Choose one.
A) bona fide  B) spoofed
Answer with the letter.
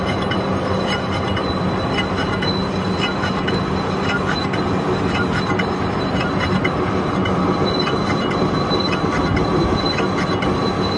A